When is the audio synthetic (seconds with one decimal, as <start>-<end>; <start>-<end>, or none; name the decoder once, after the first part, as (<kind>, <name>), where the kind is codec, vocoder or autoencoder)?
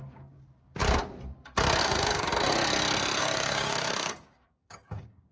0.0-0.8 (codec, DAC); 1.8-2.3; 3.2-5.3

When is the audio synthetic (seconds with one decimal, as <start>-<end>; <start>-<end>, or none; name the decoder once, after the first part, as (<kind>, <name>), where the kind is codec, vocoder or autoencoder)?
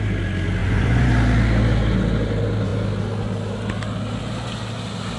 0.6-1.1 (vocoder, Vocos)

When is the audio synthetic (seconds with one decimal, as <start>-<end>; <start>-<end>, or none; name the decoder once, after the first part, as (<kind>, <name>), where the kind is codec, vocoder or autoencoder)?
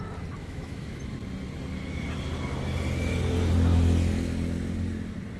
0.4-1.0 (autoencoder, DAC-VAE)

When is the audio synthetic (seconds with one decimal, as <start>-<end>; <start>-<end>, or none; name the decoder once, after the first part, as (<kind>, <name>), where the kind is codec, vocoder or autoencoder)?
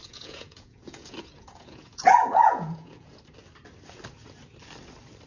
0.0-3.2 (vocoder, Vocos)